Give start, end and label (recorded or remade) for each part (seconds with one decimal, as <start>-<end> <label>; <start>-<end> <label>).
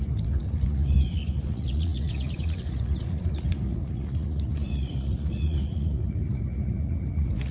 0.0-7.5 remade